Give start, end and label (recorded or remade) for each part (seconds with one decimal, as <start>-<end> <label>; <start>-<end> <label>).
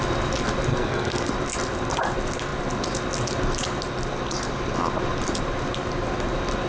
0.0-0.7 recorded; 0.7-1.3 remade; 1.3-6.7 recorded